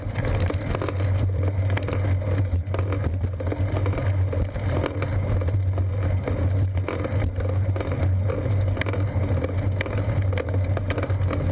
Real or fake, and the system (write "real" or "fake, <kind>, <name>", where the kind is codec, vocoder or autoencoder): real